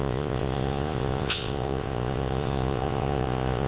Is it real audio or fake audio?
fake